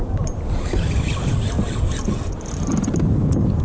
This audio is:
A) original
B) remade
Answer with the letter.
A